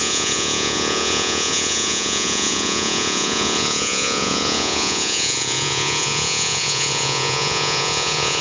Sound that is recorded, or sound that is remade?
remade